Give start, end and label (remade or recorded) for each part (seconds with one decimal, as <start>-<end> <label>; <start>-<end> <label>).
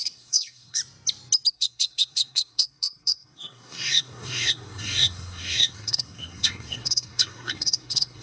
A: 0.0-0.8 remade; 0.8-1.5 recorded; 1.5-8.2 remade